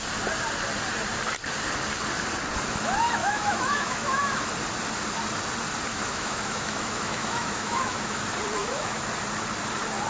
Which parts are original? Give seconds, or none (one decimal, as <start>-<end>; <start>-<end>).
0.0-3.2; 4.2-5.9; 8.2-8.6; 9.1-10.1